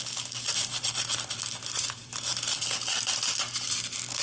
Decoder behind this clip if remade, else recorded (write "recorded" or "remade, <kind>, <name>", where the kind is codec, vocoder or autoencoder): recorded